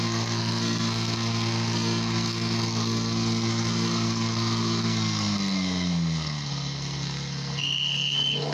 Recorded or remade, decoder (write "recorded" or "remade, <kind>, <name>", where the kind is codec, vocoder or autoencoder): remade, codec, SNAC